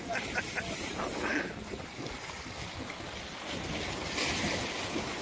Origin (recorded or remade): recorded